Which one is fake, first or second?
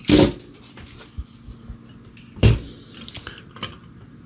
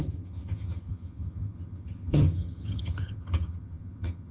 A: second